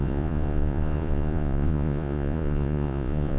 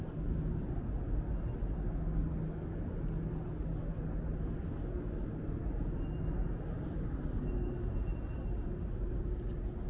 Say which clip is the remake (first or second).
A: first